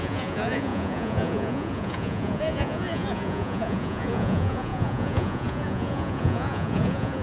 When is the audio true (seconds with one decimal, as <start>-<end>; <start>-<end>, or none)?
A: none